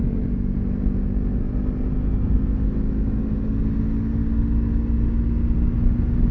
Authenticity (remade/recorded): recorded